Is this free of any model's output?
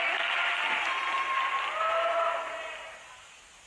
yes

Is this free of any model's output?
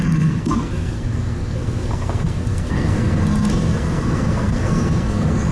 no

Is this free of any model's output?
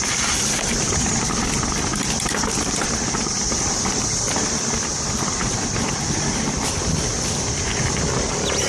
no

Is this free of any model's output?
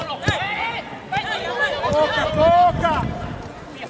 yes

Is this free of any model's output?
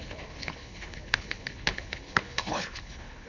no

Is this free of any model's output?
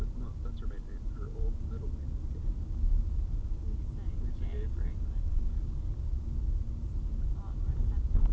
yes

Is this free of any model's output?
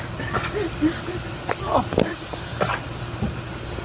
yes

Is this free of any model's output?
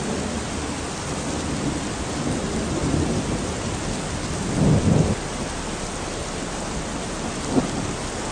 yes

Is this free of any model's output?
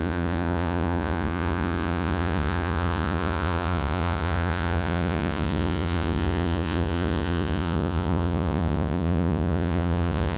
no